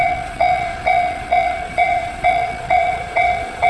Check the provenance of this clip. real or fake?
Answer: fake